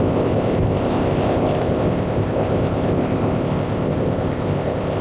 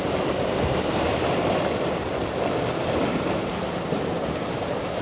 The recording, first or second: second